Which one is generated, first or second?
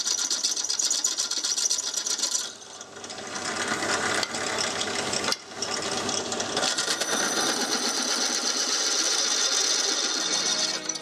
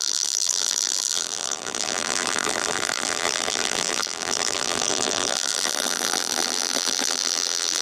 second